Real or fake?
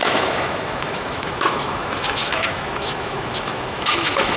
fake